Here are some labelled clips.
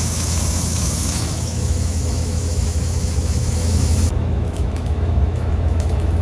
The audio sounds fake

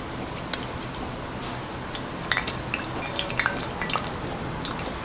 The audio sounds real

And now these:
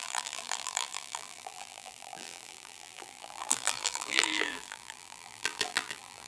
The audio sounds fake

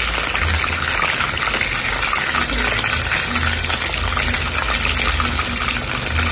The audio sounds real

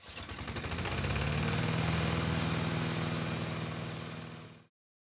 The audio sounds real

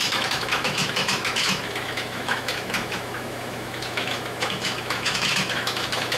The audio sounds fake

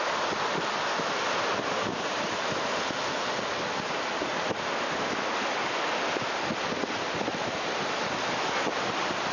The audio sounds real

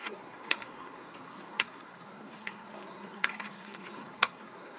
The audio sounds fake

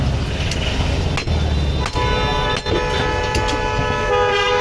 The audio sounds real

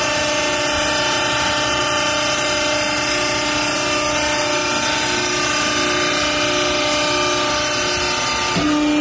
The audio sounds real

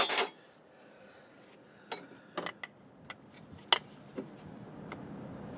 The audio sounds real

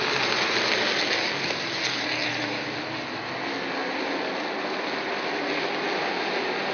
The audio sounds real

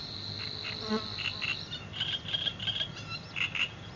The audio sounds real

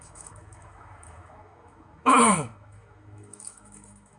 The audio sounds fake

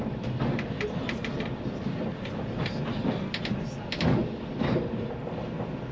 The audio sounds real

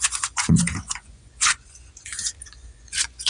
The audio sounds fake